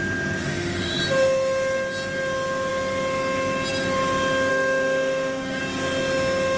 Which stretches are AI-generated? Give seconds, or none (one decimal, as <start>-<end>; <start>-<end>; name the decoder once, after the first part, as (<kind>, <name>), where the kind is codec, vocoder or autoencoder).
0.4-1.0 (autoencoder, DAC-VAE); 4.5-5.6